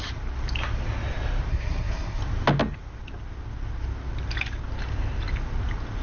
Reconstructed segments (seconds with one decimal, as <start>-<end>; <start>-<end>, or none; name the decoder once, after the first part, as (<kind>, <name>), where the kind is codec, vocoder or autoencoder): 1.5-2.2 (codec, SNAC)